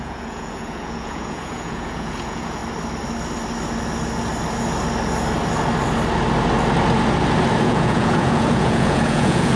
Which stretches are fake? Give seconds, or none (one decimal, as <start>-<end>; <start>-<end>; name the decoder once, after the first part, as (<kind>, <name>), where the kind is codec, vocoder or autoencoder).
0.0-2.6 (vocoder, Vocos); 7.6-9.6